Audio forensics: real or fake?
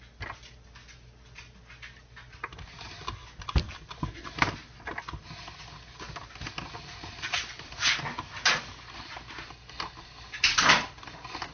real